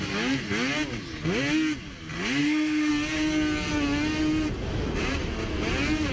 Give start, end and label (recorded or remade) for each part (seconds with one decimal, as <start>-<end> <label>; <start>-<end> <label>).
0.0-2.4 recorded; 2.4-2.9 remade; 2.9-6.1 recorded